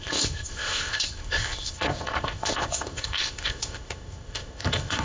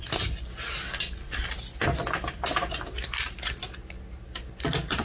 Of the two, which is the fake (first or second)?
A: first